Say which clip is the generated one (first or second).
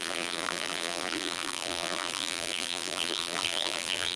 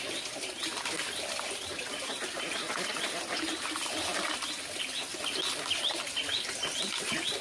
first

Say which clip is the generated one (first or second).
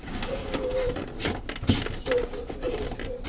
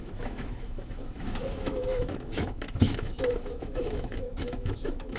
second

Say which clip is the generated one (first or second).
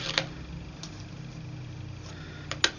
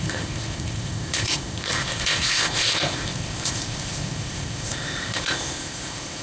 second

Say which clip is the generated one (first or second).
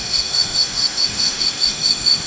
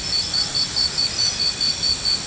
first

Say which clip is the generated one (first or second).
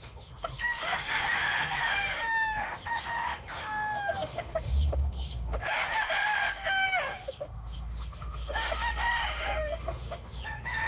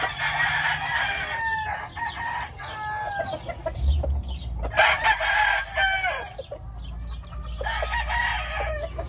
first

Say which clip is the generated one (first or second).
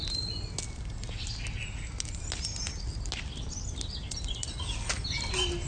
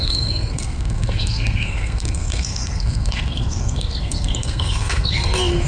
second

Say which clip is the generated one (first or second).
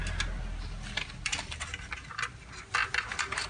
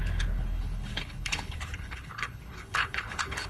second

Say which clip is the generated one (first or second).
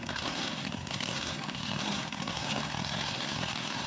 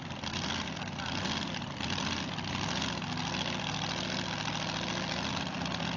first